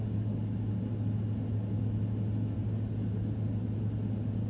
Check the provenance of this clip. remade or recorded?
recorded